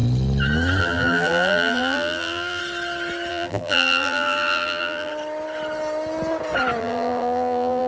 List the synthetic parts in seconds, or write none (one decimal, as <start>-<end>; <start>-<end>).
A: 0.8-2.6; 3.3-5.1; 6.8-7.9